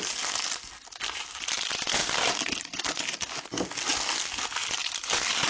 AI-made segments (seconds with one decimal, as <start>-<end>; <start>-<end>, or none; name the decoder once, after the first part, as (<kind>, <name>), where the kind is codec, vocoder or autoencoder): none